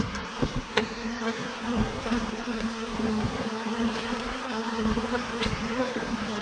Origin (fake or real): fake